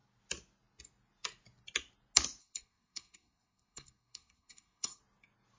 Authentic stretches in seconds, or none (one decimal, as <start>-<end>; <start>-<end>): 0.0-2.4; 5.0-5.6